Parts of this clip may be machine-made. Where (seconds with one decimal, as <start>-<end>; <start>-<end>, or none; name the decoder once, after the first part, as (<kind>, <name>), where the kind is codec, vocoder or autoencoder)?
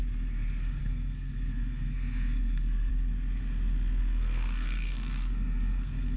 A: 0.8-2.9 (codec, SNAC); 4.0-6.2